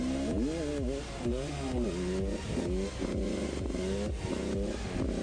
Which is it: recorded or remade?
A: recorded